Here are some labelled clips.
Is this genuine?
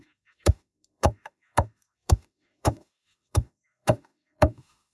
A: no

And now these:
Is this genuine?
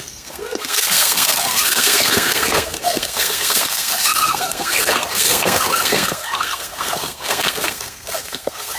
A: no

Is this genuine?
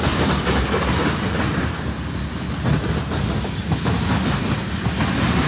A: yes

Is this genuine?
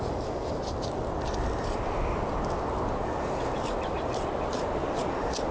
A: yes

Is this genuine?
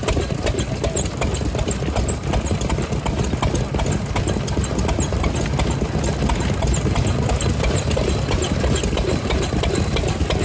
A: yes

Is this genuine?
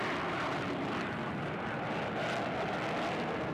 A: yes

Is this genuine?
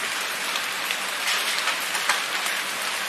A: yes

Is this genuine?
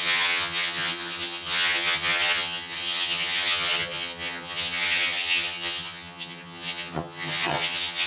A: no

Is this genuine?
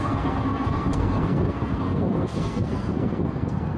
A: no